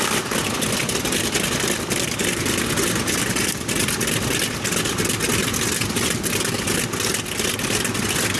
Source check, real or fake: real